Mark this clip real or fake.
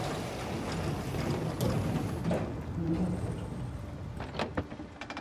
real